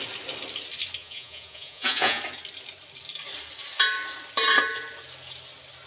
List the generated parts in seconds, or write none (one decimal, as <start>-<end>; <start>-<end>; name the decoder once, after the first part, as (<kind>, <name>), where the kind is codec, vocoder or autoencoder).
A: 1.0-2.2 (vocoder, Vocos)

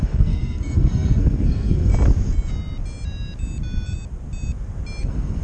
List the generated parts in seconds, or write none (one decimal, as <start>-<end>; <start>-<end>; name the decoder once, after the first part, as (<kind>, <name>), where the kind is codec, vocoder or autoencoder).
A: 0.0-1.9 (codec, SNAC); 5.0-5.4

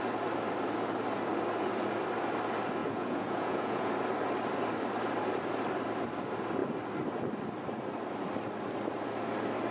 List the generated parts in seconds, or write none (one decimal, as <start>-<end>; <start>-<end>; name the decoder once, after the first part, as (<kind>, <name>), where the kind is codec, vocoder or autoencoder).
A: 2.8-3.9 (vocoder, Vocos)

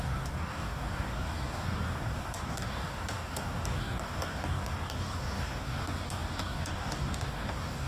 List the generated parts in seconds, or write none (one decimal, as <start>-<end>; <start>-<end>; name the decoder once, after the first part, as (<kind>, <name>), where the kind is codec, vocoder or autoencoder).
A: 0.0-7.9 (codec, DAC)